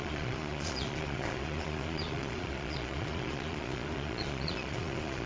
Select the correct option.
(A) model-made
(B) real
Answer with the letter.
A